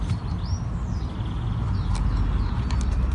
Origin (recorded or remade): recorded